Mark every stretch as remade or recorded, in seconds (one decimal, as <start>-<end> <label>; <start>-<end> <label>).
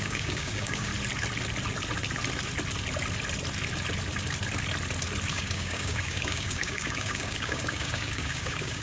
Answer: 0.0-0.9 remade; 0.9-5.3 recorded; 5.3-8.8 remade